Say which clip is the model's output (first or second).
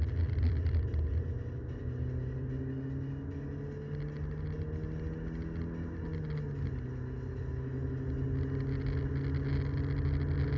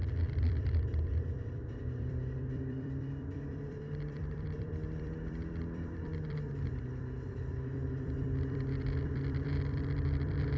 second